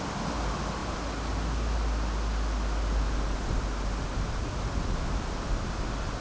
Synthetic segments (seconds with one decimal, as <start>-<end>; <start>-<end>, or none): none